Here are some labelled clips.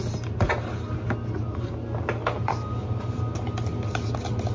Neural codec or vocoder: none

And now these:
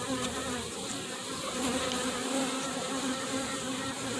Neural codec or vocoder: vocoder, BigVGAN v2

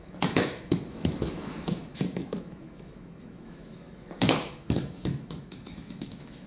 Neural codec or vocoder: autoencoder, DAC-VAE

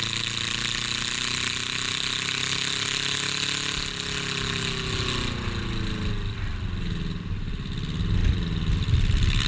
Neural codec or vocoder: none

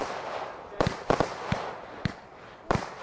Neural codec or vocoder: none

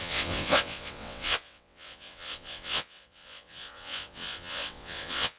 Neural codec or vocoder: vocoder, WaveNeXt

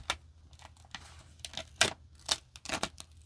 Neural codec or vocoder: none